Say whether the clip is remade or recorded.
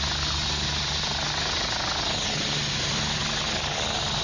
recorded